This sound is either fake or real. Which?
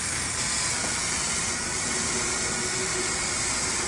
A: real